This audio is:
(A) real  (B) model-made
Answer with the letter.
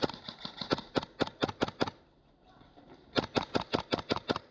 A